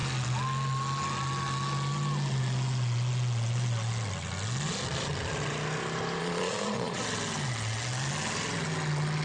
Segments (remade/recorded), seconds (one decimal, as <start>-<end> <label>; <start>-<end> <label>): 0.0-6.2 recorded; 6.2-7.0 remade; 7.0-9.2 recorded